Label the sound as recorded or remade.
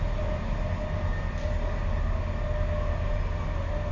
recorded